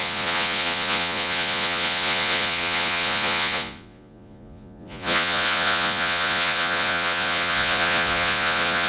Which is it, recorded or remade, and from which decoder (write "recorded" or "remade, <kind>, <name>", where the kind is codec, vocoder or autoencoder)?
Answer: remade, vocoder, Vocos